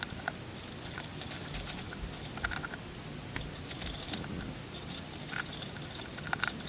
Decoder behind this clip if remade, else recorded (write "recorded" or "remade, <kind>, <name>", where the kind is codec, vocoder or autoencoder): recorded